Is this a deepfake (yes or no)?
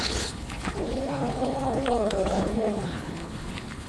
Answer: yes